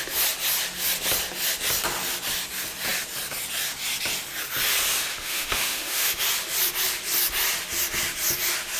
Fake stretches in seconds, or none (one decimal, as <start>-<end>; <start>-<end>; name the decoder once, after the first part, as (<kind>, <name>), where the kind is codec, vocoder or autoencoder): 5.1-6.2 (autoencoder, DAC-VAE)